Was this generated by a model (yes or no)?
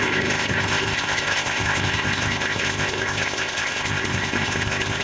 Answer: yes